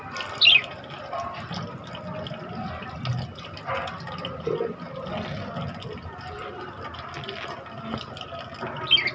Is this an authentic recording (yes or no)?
yes